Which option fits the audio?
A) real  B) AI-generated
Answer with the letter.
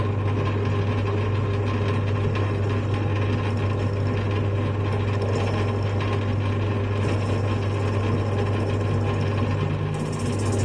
A